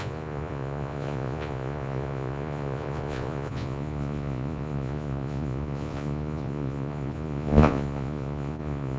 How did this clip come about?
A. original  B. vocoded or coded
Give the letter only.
B